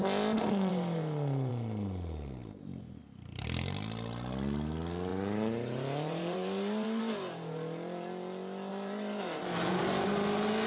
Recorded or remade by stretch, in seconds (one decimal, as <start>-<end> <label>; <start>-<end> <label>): 0.0-0.7 recorded; 0.7-1.5 remade; 1.5-2.4 recorded; 2.4-3.0 remade; 3.0-5.1 recorded; 5.1-7.0 remade; 7.0-8.7 recorded; 8.7-10.1 remade; 10.1-10.7 recorded